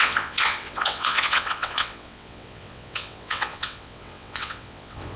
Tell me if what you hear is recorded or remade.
remade